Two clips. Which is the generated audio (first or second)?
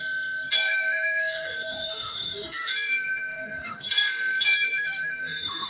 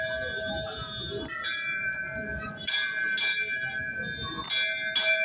first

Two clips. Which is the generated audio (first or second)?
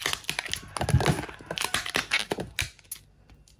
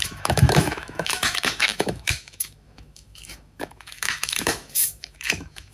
second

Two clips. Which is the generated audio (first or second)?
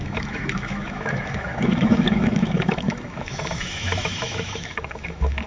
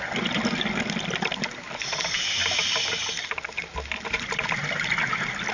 first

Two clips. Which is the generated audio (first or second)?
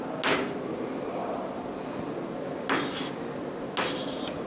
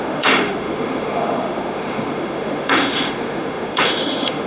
second